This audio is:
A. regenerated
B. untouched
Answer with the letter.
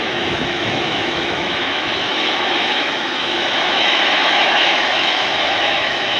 A